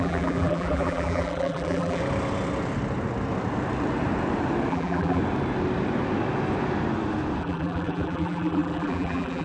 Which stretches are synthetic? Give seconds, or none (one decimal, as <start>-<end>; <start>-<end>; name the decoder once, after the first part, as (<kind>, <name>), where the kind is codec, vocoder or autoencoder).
0.0-2.0 (vocoder, BigVGAN v2); 4.7-5.2; 7.4-9.4